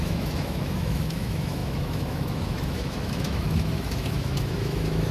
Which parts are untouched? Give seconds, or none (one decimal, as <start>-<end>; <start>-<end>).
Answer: none